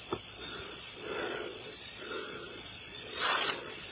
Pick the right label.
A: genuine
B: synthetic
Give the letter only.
B